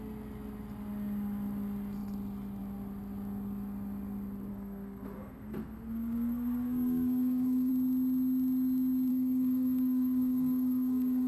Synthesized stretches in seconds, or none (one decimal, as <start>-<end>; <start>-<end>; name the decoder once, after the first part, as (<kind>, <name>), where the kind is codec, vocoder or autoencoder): 4.5-7.7 (codec, SNAC); 9.1-11.3